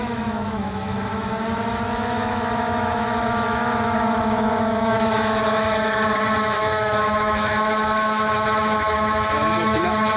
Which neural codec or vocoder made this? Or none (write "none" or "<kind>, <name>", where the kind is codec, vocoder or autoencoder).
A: autoencoder, DAC-VAE